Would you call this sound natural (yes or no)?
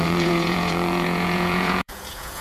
no